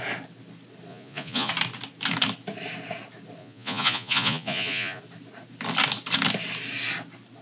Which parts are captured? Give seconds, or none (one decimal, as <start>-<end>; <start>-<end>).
0.0-0.9; 1.5-3.4; 5.0-7.4